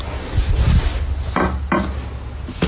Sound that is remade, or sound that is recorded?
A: recorded